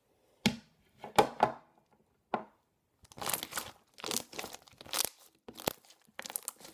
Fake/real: real